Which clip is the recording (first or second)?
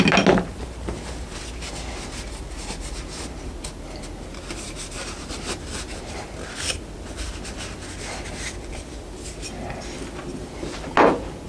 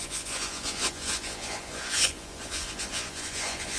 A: first